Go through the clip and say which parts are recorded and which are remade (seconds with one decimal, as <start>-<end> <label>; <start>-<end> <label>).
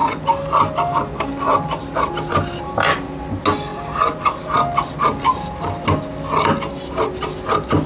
0.0-7.9 recorded